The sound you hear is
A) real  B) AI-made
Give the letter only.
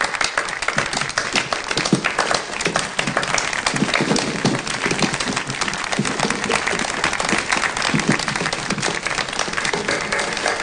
A